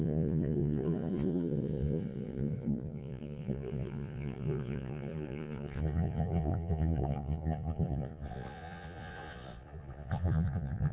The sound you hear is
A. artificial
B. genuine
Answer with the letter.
A